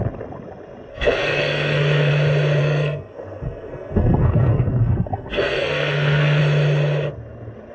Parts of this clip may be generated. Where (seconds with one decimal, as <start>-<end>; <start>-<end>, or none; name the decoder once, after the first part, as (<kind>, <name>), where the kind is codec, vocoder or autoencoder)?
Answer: 0.9-2.1 (codec, SNAC); 2.6-6.4